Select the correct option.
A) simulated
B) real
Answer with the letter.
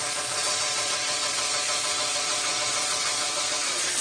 A